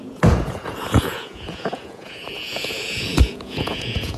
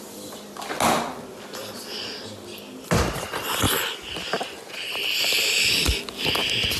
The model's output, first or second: first